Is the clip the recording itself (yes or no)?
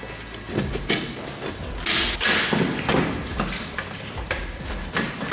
yes